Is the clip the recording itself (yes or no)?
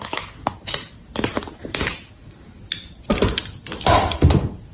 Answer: no